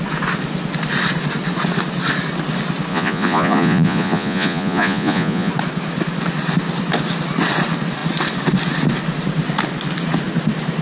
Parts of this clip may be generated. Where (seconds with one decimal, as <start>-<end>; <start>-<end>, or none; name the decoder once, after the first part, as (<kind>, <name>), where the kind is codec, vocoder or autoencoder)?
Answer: 2.9-5.5 (vocoder, Vocos)